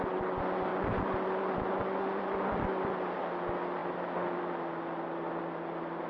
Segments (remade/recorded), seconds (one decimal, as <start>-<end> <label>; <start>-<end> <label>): 0.0-0.7 recorded; 0.7-3.2 remade; 3.2-6.1 recorded